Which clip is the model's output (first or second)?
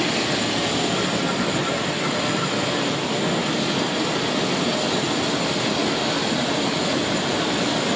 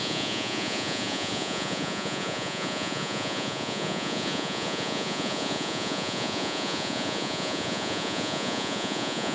second